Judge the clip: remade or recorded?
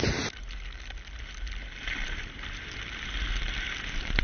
recorded